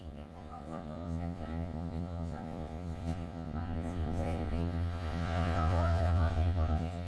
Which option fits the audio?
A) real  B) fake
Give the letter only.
B